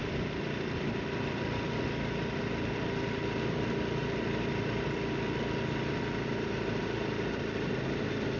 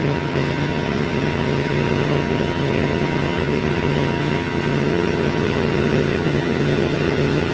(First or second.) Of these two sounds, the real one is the first